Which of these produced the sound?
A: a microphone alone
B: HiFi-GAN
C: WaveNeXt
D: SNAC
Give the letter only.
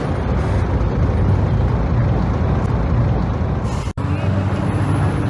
A